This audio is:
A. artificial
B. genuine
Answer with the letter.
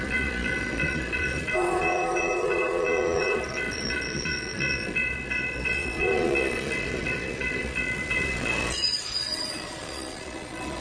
A